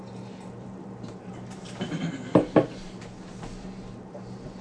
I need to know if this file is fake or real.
fake